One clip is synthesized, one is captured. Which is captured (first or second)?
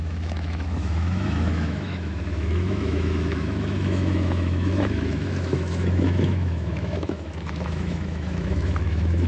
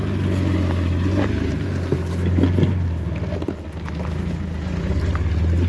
second